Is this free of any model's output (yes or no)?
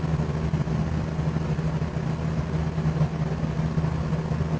yes